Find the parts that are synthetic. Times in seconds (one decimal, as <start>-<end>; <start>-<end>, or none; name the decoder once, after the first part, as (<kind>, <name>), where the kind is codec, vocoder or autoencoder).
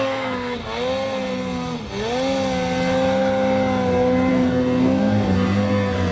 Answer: 0.0-0.6 (codec, SNAC); 4.3-6.1